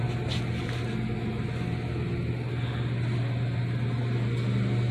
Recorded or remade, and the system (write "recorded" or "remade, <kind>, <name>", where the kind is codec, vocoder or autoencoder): recorded